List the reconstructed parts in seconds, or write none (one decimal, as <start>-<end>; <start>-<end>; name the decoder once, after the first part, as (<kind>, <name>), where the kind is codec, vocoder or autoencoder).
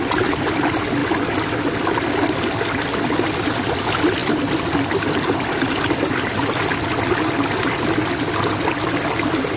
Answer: none